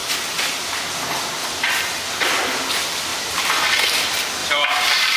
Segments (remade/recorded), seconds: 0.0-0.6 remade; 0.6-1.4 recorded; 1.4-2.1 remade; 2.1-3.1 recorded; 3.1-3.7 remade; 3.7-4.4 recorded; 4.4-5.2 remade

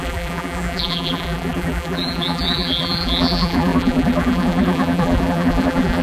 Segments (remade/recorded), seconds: 0.0-6.0 remade

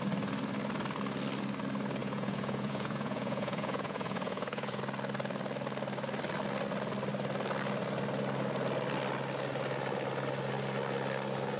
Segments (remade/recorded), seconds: 0.0-2.0 recorded; 2.0-4.8 remade; 4.8-11.6 recorded

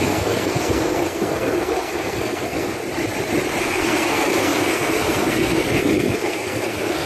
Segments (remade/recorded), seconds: 0.0-2.8 remade; 2.8-3.6 recorded; 3.6-7.1 remade

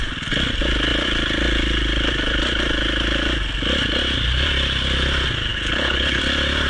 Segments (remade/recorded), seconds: 0.0-5.5 recorded; 5.5-6.2 remade; 6.2-6.7 recorded

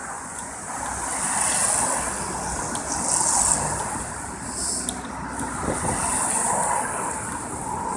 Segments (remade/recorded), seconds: 0.0-0.6 remade; 0.6-8.0 recorded

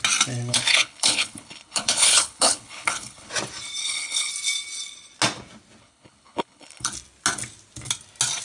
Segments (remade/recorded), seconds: 0.0-0.5 recorded; 0.5-3.3 remade; 3.3-3.8 recorded; 3.8-4.3 remade; 4.3-5.8 recorded; 5.8-6.9 remade; 6.9-8.4 recorded

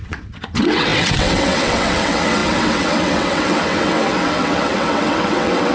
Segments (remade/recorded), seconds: 0.0-5.7 remade